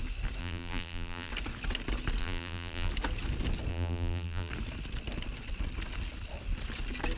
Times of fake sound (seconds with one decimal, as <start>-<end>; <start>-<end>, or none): 0.4-1.3; 2.2-2.9; 3.7-4.5